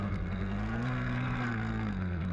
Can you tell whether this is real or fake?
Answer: fake